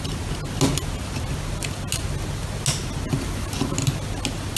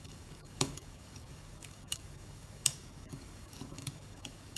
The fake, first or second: second